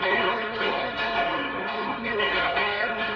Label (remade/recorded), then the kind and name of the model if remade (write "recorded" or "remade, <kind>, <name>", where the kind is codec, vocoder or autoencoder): remade, codec, SNAC